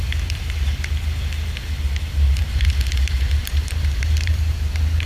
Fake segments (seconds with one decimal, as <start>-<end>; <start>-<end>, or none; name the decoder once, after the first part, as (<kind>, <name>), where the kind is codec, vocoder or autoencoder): 0.0-0.7 (vocoder, BigVGAN v2); 2.4-5.1